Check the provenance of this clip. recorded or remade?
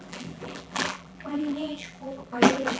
remade